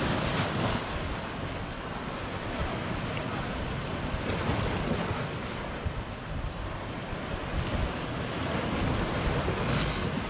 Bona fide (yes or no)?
yes